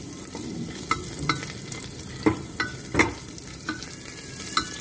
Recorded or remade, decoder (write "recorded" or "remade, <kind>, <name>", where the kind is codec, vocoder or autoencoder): recorded